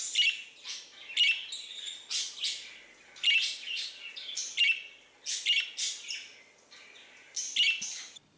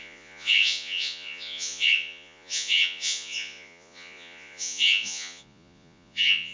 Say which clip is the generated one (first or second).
second